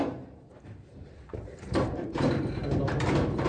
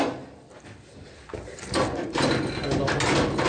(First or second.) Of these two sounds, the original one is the second